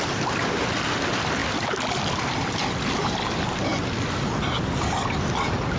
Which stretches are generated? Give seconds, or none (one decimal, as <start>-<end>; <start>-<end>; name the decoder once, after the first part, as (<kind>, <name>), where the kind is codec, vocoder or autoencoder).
none